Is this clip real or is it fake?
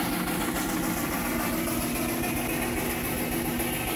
real